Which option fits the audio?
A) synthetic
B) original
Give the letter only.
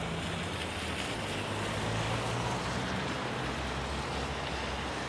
B